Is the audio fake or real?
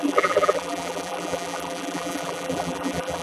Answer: fake